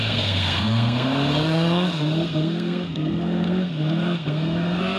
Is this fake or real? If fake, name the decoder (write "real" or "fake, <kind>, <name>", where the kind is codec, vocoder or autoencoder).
fake, codec, SNAC